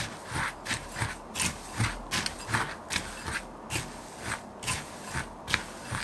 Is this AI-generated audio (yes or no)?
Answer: no